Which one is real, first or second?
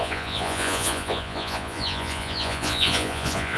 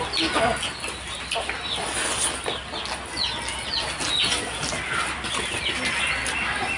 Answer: second